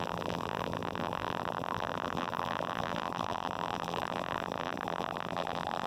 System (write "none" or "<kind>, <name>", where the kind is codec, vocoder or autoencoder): vocoder, BigVGAN v2